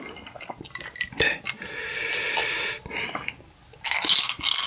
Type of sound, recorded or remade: recorded